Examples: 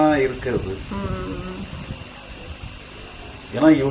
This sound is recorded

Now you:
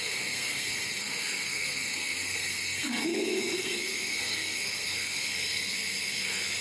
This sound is remade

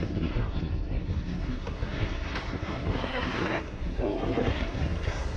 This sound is remade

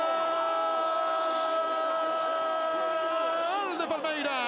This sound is recorded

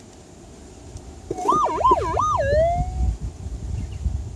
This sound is recorded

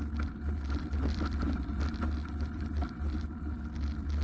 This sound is recorded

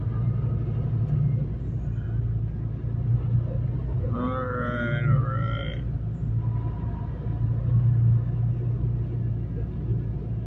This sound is recorded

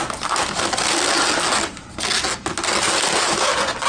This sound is recorded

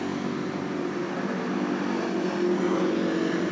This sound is recorded